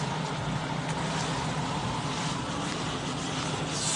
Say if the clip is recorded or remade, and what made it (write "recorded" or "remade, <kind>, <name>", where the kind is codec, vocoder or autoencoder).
recorded